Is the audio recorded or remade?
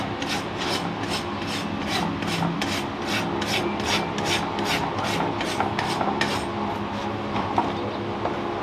recorded